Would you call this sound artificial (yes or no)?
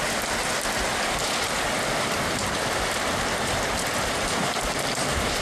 no